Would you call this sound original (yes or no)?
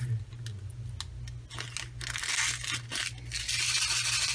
yes